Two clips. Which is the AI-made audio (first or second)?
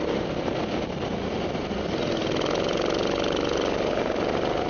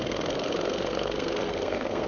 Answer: second